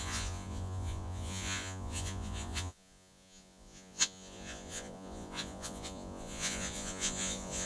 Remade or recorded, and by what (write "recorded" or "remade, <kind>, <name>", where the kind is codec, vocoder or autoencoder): remade, vocoder, Vocos